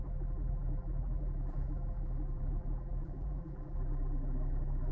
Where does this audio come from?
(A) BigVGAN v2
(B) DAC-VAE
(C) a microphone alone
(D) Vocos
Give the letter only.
A